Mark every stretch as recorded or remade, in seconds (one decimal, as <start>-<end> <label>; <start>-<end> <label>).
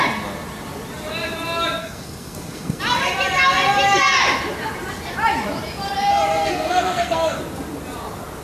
0.0-1.8 recorded; 1.8-2.8 remade; 2.8-6.1 recorded; 6.1-7.4 remade; 7.4-8.4 recorded